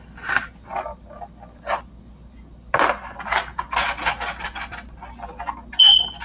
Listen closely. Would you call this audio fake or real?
real